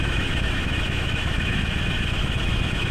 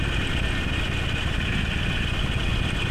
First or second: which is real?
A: second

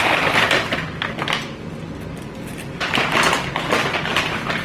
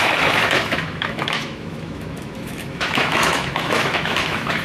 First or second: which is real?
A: first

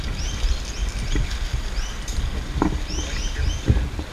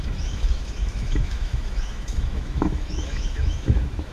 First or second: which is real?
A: first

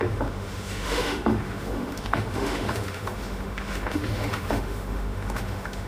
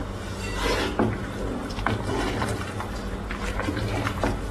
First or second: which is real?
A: second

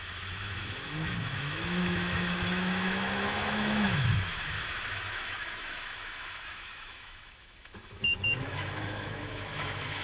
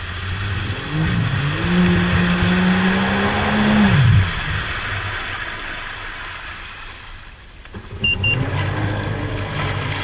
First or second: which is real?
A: second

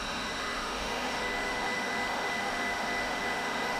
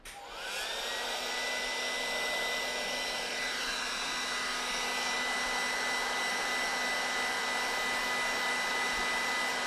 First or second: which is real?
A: second